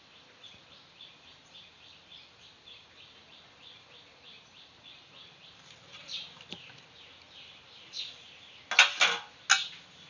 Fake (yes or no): no